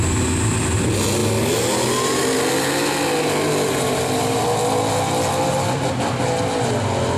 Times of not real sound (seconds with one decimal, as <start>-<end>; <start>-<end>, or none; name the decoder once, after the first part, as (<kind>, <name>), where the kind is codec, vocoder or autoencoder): none